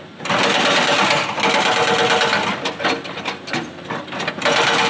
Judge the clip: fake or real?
real